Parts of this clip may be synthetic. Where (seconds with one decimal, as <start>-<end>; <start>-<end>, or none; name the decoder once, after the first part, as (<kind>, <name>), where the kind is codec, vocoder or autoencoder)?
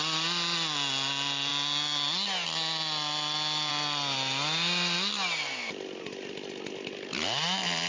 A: none